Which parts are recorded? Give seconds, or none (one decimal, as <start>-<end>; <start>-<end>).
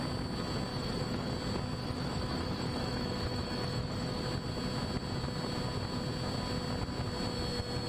0.0-0.7; 1.3-1.8; 4.2-7.9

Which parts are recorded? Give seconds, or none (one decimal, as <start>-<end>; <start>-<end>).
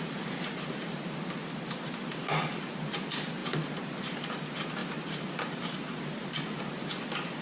0.0-7.4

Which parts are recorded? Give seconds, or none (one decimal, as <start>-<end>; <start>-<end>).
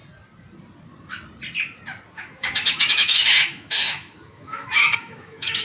0.0-2.1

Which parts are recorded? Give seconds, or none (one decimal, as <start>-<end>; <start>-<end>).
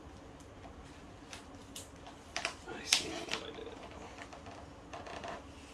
0.0-5.7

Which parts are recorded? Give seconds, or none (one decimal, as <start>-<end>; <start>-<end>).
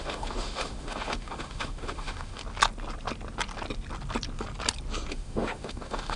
2.4-5.1